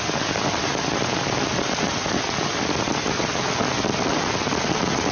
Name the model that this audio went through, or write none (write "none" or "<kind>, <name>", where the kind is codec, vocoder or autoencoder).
none